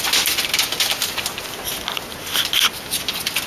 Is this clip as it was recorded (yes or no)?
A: yes